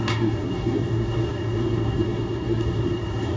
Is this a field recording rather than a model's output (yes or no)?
no